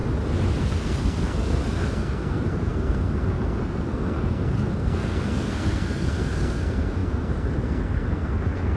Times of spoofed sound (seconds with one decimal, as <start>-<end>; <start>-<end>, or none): 0.6-8.8